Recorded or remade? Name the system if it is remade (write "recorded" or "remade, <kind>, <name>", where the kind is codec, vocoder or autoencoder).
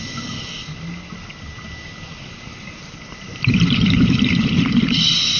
recorded